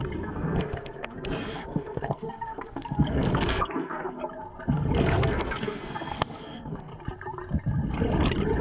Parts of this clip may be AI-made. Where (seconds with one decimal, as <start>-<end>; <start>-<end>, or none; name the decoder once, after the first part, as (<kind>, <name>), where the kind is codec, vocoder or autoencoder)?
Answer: 0.0-4.2 (codec, SNAC); 5.0-6.9